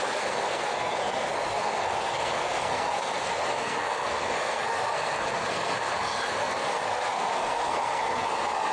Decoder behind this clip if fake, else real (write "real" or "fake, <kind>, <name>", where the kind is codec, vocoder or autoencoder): fake, codec, SNAC